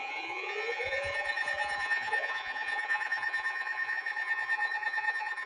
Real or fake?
fake